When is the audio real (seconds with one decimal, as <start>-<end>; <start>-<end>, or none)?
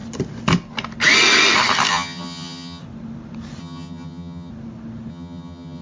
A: 0.0-1.9; 2.8-3.6; 4.5-5.1